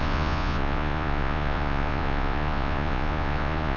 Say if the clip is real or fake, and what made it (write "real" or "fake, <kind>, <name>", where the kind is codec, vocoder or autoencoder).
fake, vocoder, Vocos